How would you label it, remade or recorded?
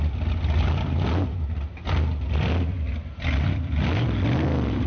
recorded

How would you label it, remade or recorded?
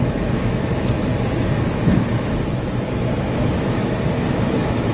remade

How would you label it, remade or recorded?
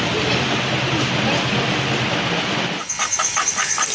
recorded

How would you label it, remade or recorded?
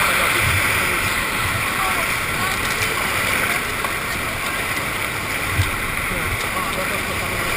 recorded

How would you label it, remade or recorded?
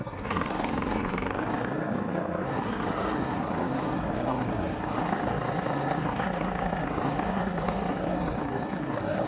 remade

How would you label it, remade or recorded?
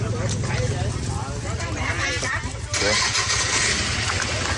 recorded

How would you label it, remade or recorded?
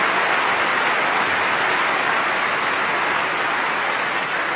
recorded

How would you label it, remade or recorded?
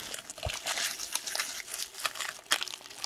recorded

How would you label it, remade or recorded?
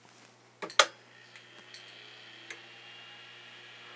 recorded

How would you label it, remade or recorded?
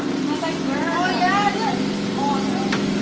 recorded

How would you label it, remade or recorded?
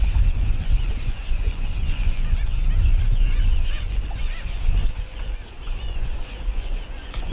remade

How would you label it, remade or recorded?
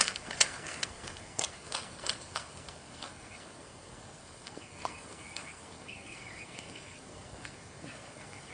remade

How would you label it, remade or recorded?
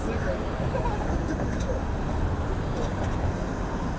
recorded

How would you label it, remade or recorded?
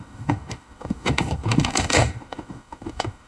remade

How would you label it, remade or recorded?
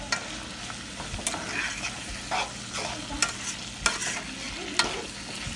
recorded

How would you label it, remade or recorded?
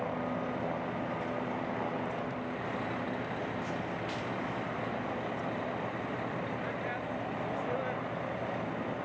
recorded